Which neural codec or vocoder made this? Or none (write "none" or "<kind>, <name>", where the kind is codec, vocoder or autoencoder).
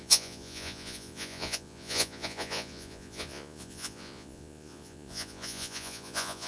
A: vocoder, Vocos